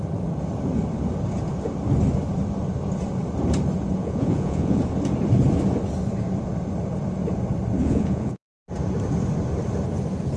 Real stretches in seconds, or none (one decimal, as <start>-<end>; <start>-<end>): 0.0-4.0; 4.8-7.8; 8.5-10.4